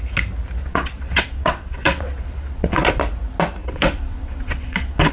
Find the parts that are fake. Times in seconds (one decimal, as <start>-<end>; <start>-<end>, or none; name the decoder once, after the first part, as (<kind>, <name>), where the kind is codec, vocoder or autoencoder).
0.6-2.9 (vocoder, WaveNeXt); 3.6-5.1